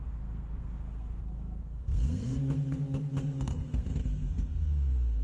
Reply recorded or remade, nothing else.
remade